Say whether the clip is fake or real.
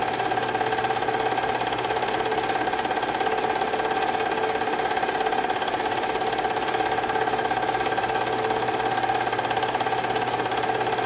real